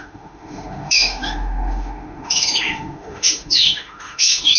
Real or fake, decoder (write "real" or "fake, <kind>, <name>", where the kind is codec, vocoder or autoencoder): fake, autoencoder, DAC-VAE